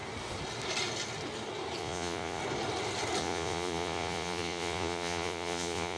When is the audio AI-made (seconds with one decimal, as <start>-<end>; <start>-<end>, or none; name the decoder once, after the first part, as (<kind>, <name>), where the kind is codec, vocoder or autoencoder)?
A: 1.8-2.4 (vocoder, Vocos); 3.2-6.0